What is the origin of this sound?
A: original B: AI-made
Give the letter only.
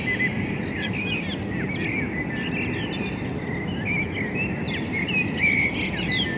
A